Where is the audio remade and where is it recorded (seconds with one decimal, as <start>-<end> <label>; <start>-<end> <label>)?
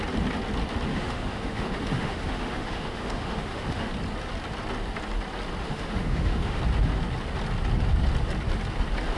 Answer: 0.0-0.9 recorded; 0.9-3.9 remade; 3.9-5.6 recorded; 5.6-6.6 remade; 6.6-9.2 recorded